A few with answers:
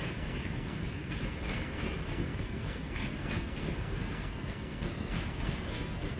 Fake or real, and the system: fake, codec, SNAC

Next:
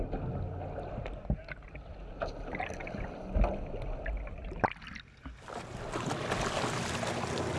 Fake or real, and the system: real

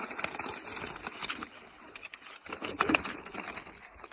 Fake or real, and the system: real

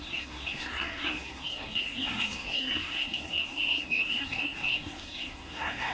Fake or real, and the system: fake, codec, SNAC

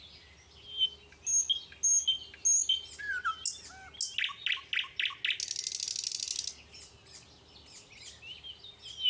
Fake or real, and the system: real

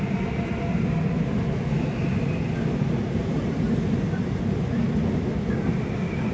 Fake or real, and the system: real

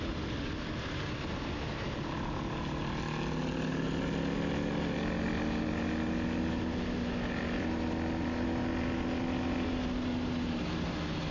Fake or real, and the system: real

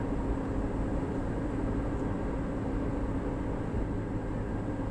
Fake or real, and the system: real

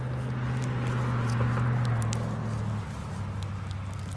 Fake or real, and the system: real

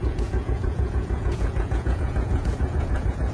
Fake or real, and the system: fake, vocoder, Vocos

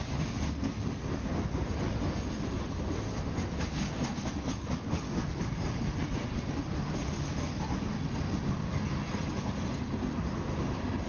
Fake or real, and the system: real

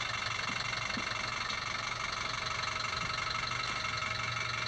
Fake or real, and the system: real